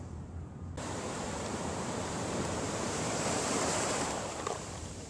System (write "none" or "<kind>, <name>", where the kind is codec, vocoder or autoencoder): vocoder, BigVGAN v2